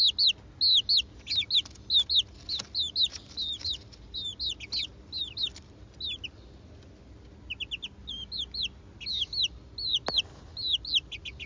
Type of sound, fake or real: real